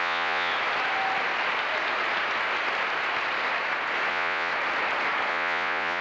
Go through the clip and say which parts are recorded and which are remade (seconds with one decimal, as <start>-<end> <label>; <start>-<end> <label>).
0.0-0.5 remade; 0.5-4.1 recorded; 4.1-4.5 remade; 4.5-5.3 recorded; 5.3-6.0 remade